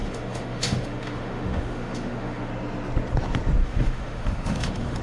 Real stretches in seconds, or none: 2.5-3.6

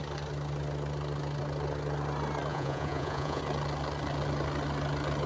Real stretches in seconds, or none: 0.0-2.5; 3.4-5.3

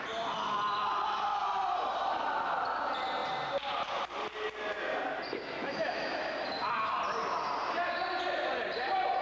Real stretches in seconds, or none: 0.0-5.6; 6.2-9.2

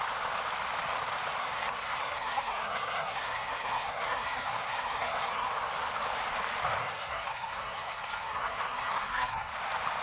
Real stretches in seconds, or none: 0.0-1.4; 5.5-6.8; 9.5-10.0